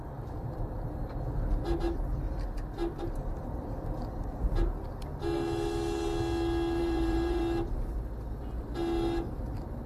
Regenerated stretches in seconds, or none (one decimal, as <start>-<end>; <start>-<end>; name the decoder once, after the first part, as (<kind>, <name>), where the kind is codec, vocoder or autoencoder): 6.8-7.4 (vocoder, BigVGAN v2)